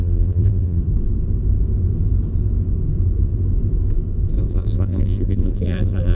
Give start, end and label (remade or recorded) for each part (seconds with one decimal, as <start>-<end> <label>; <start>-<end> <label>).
0.0-0.8 remade; 0.8-4.5 recorded; 4.5-6.1 remade